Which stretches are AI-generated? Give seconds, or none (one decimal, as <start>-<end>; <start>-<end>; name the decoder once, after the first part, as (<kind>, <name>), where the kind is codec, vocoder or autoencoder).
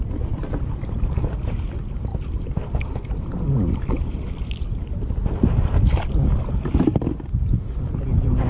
2.1-4.3 (vocoder, BigVGAN v2); 6.6-8.5